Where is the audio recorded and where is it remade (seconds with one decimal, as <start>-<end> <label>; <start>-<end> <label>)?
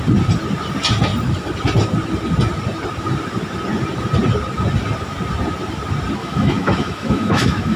0.0-6.2 recorded; 6.2-7.8 remade